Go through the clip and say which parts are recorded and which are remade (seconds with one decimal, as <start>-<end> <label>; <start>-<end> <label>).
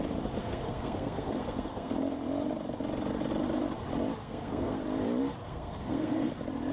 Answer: 0.0-0.4 recorded; 0.4-1.9 remade; 1.9-4.2 recorded; 4.2-4.8 remade; 4.8-5.4 recorded; 5.4-6.3 remade; 6.3-6.7 recorded